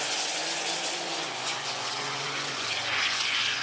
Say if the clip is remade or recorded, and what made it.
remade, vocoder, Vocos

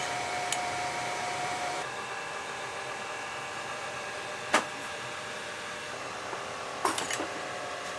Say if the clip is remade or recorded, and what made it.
remade, vocoder, BigVGAN v2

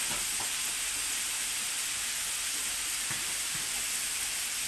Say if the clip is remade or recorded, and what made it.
recorded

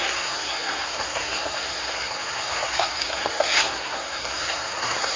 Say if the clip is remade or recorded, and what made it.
remade, codec, SNAC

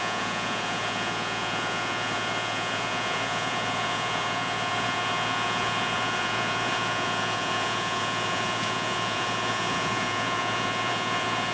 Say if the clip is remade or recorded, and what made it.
remade, vocoder, Vocos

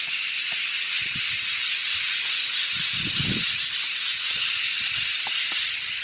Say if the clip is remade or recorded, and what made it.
recorded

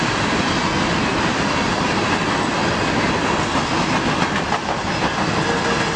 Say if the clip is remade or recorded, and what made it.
recorded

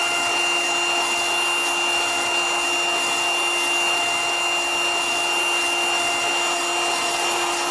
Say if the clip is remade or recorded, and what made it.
recorded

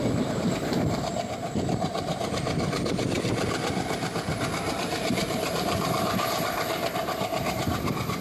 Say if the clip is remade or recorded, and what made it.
remade, vocoder, BigVGAN v2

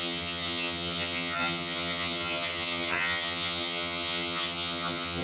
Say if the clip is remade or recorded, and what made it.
remade, vocoder, HiFi-GAN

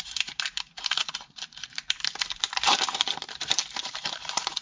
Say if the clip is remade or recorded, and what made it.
remade, vocoder, BigVGAN v2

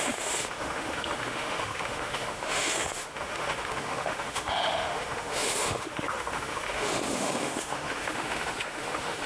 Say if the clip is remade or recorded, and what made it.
remade, autoencoder, DAC-VAE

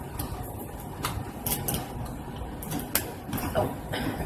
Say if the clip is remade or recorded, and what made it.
recorded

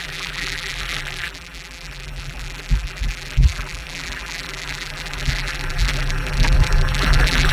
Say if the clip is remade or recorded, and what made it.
remade, vocoder, BigVGAN v2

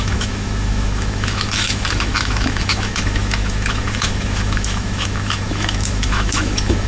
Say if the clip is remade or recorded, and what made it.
remade, autoencoder, DAC-VAE